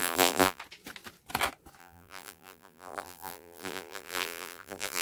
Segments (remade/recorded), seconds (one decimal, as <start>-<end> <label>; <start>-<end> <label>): 0.0-0.6 remade; 0.6-1.8 recorded; 1.8-5.0 remade